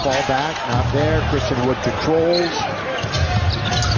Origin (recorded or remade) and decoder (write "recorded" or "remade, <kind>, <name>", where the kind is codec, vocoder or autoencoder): recorded